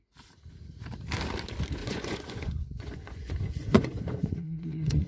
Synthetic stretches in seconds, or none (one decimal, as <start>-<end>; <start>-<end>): 1.8-5.1